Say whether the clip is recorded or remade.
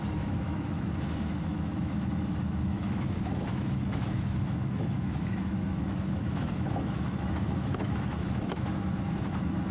remade